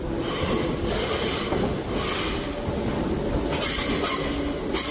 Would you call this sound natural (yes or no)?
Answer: yes